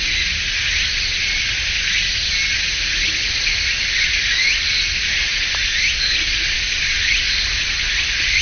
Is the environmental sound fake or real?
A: real